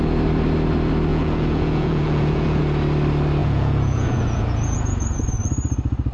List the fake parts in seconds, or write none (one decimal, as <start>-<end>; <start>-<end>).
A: 1.1-2.6; 3.4-5.2